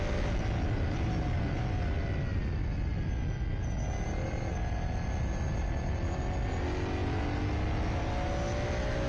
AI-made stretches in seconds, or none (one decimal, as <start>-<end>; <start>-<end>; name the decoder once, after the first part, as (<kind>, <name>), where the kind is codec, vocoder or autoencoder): none